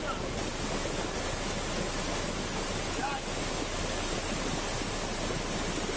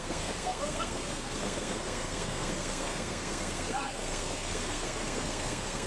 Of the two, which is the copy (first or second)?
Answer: second